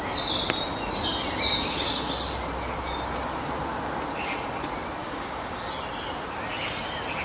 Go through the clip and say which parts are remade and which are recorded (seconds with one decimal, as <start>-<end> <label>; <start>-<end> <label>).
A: 0.0-5.0 recorded; 5.0-5.6 remade; 5.6-7.2 recorded